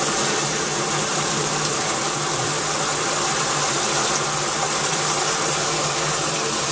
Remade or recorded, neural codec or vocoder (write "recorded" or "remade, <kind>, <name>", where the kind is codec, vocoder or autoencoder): recorded